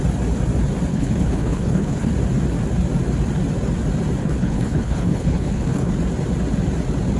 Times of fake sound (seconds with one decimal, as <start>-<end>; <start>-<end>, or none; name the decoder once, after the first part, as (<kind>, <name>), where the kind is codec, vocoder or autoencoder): 0.9-2.1 (codec, HILCodec); 4.2-5.9